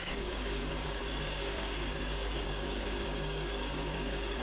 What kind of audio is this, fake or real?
fake